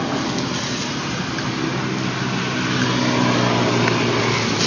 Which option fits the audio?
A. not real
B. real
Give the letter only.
B